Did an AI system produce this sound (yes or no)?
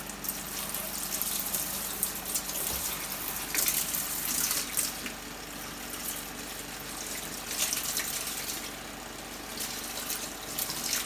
no